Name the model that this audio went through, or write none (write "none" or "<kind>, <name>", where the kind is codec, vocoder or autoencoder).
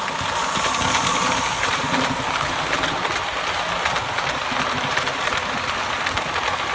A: none